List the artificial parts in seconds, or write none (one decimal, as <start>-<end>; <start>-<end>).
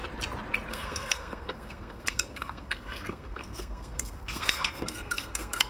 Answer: 0.7-5.7